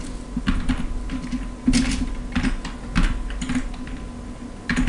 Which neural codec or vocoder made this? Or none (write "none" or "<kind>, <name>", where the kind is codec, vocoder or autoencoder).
none